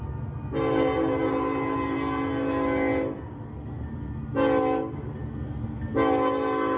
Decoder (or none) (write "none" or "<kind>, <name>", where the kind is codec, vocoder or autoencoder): none